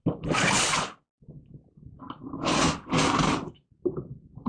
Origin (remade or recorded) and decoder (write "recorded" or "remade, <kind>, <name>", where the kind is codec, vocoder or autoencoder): recorded